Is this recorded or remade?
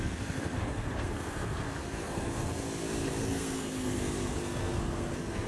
remade